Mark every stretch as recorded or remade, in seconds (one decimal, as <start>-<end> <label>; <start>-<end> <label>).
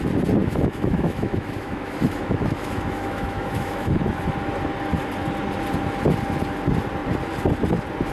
0.0-0.4 recorded; 0.4-4.0 remade; 4.0-8.1 recorded